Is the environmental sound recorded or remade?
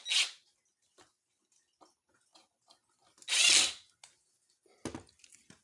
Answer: recorded